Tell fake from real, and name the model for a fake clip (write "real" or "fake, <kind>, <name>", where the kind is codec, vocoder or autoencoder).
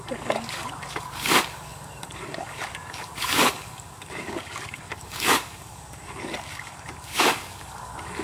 fake, codec, DAC